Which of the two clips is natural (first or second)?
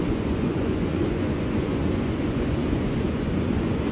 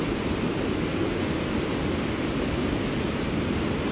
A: second